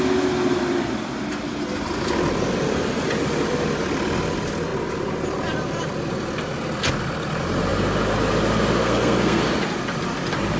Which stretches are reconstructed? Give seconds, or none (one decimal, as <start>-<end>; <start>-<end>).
8.8-9.4